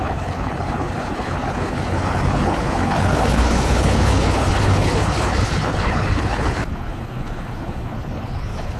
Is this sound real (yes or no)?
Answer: no